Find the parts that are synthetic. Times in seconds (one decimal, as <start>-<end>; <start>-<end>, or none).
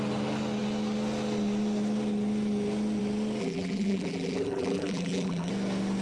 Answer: 3.4-5.5